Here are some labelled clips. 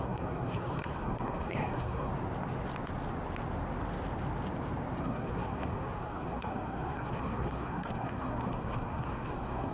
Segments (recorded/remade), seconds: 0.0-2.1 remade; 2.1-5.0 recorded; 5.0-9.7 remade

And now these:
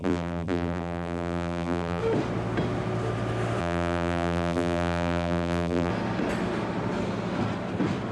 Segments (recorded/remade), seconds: 0.0-2.0 remade; 2.0-3.6 recorded; 3.6-5.9 remade; 5.9-8.1 recorded

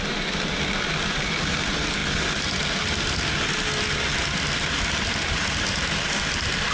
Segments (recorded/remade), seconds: 0.0-6.7 recorded